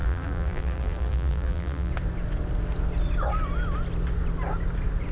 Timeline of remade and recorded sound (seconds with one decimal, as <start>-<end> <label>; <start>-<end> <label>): 0.0-1.9 remade; 1.9-5.1 recorded